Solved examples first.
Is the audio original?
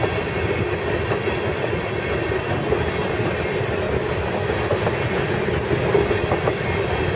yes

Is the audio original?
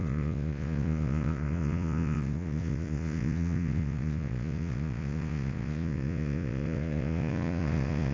no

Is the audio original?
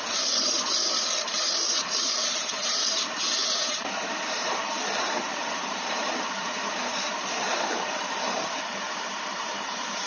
no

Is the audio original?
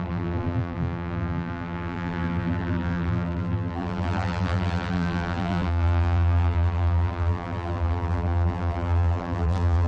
no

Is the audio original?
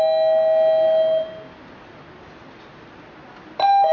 yes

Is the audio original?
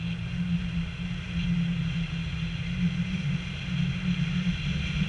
yes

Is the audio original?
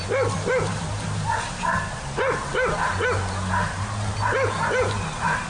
yes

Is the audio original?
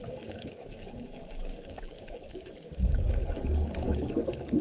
no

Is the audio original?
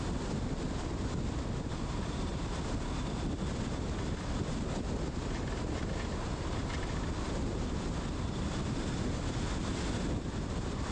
yes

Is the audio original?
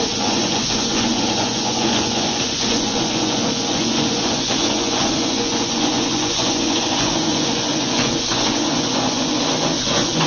no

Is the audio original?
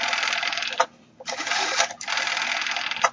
yes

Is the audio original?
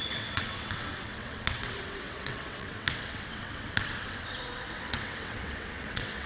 no